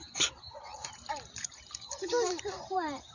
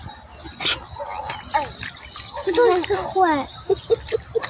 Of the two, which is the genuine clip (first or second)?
second